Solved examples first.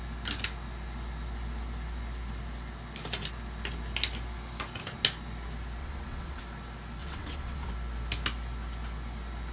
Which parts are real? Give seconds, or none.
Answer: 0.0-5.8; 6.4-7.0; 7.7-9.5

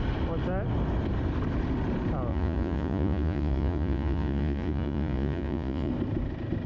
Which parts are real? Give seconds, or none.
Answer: 0.0-2.3; 5.9-6.7

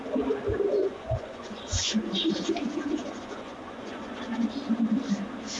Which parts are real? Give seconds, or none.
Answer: 0.0-0.8; 4.2-5.6

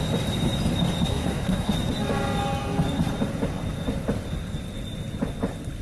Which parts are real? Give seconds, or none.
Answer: 0.0-1.1; 1.7-5.8